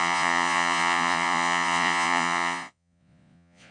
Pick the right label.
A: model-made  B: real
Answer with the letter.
A